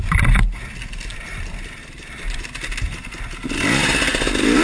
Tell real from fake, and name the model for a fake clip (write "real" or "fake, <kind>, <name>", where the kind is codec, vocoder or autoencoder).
real